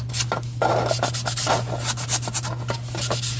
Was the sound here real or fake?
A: real